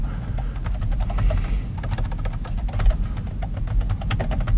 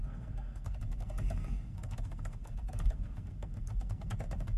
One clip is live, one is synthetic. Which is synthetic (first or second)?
second